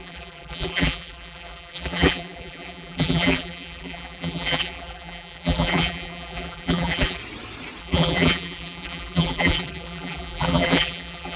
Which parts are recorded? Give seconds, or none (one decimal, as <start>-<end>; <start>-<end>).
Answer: 7.2-7.8